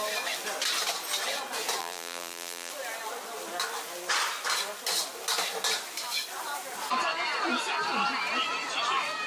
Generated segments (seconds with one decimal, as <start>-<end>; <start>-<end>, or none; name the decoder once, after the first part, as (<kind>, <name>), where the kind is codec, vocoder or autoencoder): 1.8-2.7 (vocoder, BigVGAN v2)